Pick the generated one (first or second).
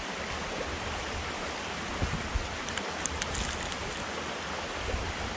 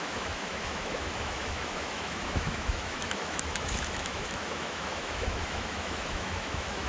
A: second